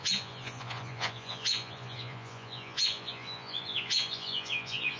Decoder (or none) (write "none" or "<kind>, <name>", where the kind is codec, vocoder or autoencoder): vocoder, Vocos